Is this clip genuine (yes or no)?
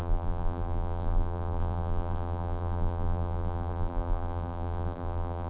no